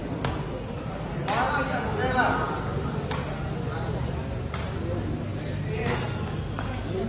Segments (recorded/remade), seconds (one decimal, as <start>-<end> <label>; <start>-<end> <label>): 0.0-7.1 recorded